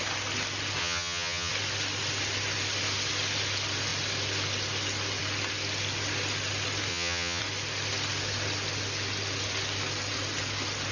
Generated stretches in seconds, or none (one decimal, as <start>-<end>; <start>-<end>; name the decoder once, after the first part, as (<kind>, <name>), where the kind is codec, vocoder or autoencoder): 0.8-1.5 (vocoder, HiFi-GAN); 6.9-7.4